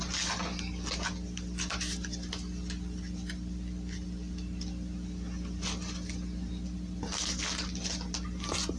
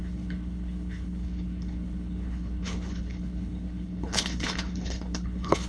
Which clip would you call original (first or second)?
first